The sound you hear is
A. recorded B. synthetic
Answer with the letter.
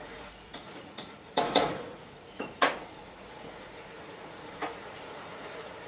B